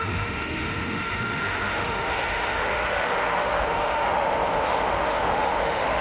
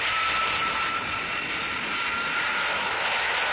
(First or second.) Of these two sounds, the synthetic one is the first